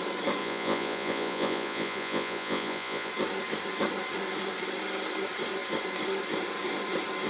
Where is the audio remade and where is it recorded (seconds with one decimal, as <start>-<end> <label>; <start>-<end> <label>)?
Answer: 0.0-0.4 recorded; 0.4-3.1 remade; 3.1-7.3 recorded